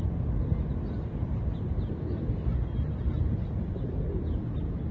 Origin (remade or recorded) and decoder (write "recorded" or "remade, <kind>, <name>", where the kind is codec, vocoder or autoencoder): recorded